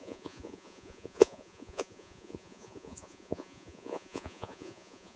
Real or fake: fake